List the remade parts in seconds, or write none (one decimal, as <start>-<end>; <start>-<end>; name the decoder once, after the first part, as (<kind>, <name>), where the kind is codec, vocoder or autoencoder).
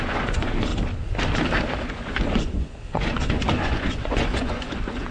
0.0-0.7 (vocoder, Vocos); 1.8-5.1